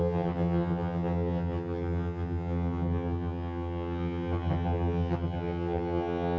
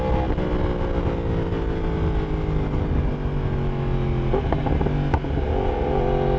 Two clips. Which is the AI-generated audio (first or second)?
first